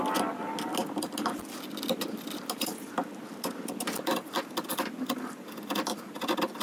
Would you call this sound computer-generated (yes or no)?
no